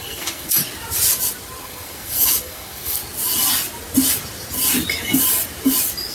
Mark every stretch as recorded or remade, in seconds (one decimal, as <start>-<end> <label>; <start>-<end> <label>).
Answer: 0.0-0.6 remade; 0.6-1.6 recorded; 1.6-3.0 remade; 3.0-6.1 recorded